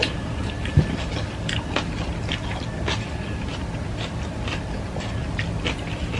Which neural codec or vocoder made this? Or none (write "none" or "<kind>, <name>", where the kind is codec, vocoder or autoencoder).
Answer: none